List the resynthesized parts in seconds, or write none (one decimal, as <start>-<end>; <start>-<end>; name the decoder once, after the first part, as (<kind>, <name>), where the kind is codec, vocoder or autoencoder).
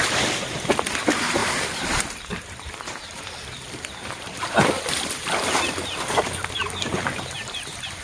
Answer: 1.4-5.6 (vocoder, BigVGAN v2)